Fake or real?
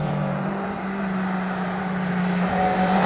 fake